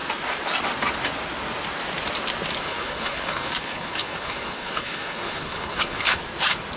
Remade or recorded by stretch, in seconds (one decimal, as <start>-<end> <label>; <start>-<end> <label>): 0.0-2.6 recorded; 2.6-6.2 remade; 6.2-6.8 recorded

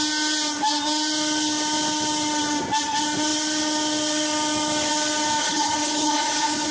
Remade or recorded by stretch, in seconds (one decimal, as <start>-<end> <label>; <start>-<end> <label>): 0.0-5.4 recorded; 5.4-6.7 remade

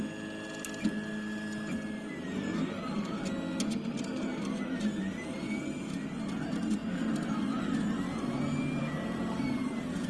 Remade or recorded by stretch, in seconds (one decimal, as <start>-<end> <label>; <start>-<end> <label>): 0.0-10.1 recorded